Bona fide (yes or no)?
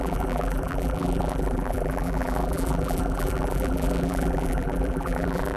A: no